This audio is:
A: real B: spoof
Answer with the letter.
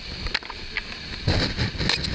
A